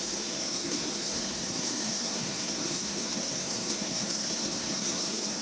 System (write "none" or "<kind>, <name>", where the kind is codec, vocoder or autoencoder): codec, SNAC